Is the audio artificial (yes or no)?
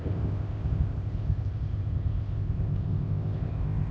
yes